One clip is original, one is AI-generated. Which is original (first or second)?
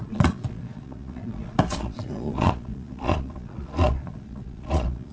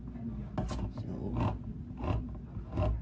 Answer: second